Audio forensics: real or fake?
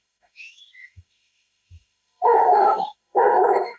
fake